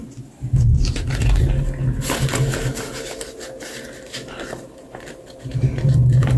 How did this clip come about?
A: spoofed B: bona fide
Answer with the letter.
B